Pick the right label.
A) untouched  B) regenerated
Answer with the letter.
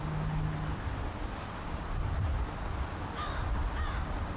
A